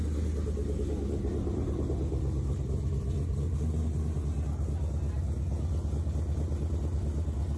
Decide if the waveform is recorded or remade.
recorded